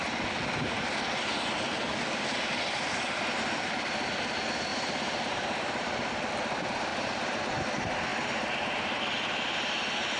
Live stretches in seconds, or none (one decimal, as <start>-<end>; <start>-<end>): 0.0-4.7; 6.3-6.9; 7.5-8.1; 9.0-10.2